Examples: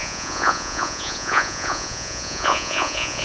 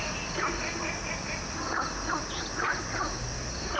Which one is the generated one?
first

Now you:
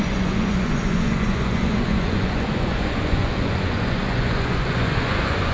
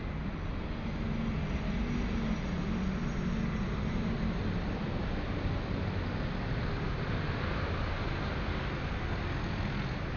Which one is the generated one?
first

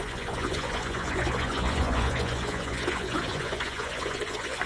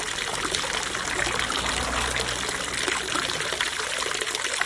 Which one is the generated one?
first